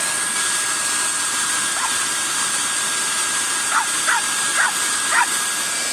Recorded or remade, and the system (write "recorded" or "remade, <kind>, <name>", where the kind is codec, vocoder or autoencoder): recorded